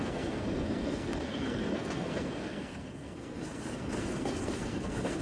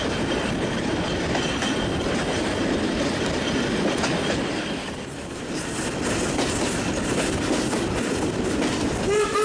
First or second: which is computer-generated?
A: first